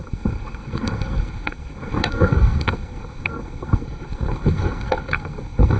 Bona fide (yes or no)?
no